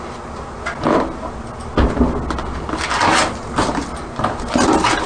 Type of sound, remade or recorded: recorded